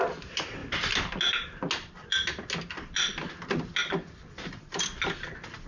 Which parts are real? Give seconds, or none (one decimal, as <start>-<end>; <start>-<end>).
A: 0.0-5.7